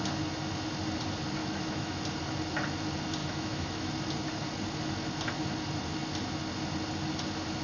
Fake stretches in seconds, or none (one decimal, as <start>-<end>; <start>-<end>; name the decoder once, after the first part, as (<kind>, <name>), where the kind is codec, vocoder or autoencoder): 1.4-2.0 (autoencoder, DAC-VAE); 3.2-3.9